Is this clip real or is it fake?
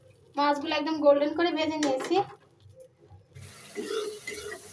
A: real